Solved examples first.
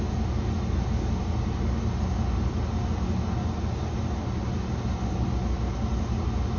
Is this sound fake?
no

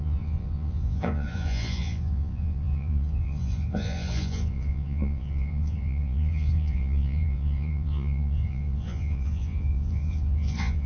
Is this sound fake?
yes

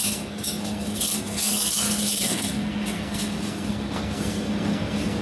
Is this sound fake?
yes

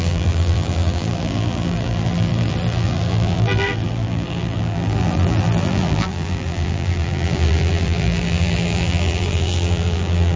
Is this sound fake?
yes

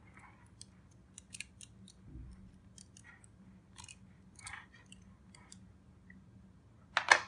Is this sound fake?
no